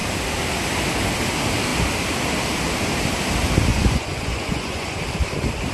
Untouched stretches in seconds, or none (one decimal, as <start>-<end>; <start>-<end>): 0.0-3.7; 5.0-5.7